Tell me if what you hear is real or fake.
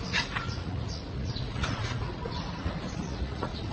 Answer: fake